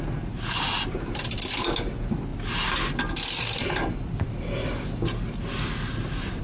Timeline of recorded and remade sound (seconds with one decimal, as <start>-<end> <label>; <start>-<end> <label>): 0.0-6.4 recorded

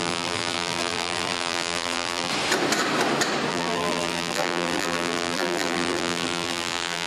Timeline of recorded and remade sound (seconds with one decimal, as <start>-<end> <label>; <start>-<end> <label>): 0.0-2.3 remade; 2.3-3.5 recorded; 3.5-7.1 remade

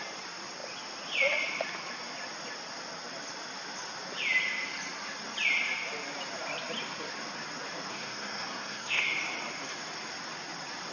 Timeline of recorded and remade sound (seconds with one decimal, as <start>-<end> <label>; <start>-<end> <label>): 0.0-7.9 recorded; 7.9-9.0 remade; 9.0-10.9 recorded

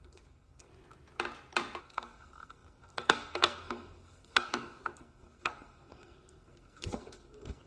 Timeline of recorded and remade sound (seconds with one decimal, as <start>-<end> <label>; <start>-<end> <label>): 0.0-0.7 remade; 0.7-1.8 recorded; 1.8-7.7 remade

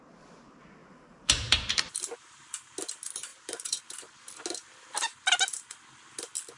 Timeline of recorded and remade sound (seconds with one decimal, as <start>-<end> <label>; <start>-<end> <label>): 0.0-0.8 recorded; 0.8-2.7 remade; 2.7-3.3 recorded; 3.3-3.8 remade; 3.8-6.6 recorded